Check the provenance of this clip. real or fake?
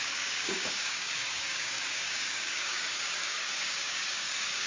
fake